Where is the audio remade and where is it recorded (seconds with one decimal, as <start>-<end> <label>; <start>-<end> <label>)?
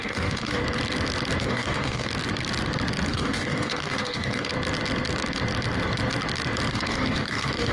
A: 0.0-0.6 remade; 0.6-1.4 recorded; 1.4-2.1 remade; 2.1-3.1 recorded; 3.1-4.5 remade; 4.5-6.7 recorded; 6.7-7.7 remade